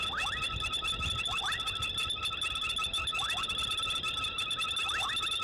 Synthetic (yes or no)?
no